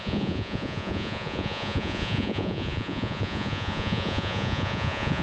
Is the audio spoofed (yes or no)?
yes